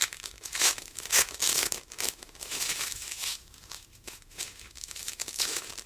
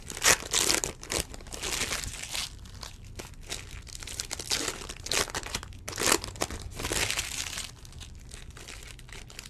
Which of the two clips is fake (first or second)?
first